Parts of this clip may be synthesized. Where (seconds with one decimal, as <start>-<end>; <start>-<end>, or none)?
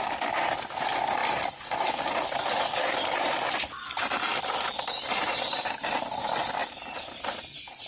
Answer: none